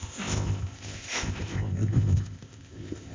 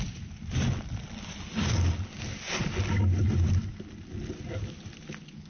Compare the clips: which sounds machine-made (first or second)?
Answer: first